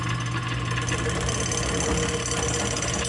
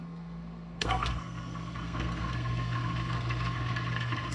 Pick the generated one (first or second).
second